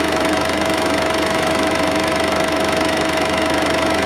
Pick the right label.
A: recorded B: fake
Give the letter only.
B